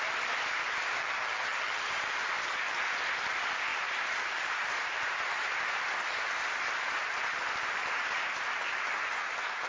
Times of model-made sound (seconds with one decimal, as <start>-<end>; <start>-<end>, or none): 1.0-1.8